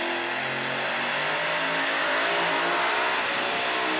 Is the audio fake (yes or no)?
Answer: no